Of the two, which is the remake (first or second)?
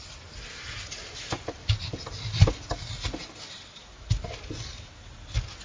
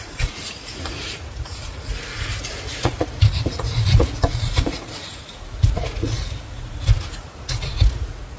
second